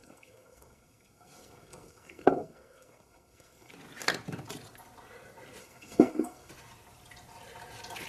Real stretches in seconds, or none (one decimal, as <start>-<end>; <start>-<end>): 3.7-5.6; 6.5-8.1